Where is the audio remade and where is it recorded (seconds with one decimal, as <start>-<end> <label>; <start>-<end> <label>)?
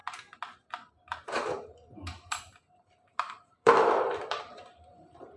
0.0-0.9 recorded; 0.9-5.4 remade